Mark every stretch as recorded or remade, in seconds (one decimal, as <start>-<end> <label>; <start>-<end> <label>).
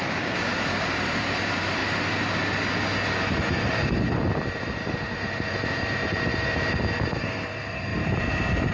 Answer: 0.0-1.8 remade; 1.8-3.5 recorded; 3.5-8.7 remade